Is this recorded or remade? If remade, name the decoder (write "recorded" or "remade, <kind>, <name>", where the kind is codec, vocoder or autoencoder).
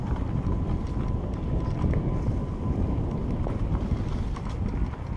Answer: recorded